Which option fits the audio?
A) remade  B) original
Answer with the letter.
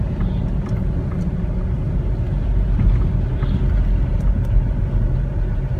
B